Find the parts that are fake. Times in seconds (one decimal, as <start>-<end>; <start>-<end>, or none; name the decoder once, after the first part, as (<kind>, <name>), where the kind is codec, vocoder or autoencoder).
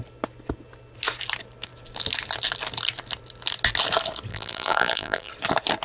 4.3-5.3 (vocoder, BigVGAN v2)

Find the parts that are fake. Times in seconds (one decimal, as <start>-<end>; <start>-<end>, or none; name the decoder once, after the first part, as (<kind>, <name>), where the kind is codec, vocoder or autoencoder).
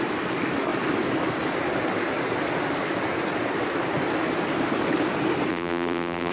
5.5-6.3 (vocoder, BigVGAN v2)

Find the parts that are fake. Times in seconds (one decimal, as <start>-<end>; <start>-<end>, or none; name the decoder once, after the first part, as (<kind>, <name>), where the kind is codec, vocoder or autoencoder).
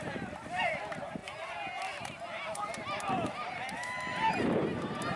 0.0-1.2 (vocoder, BigVGAN v2); 4.3-5.2